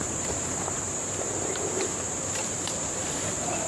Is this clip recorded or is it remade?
remade